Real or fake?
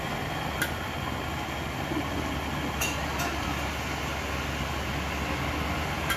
real